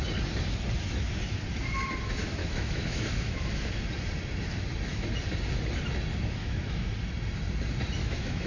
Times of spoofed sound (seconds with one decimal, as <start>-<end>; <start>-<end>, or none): 2.4-3.8; 6.4-6.9; 8.0-8.5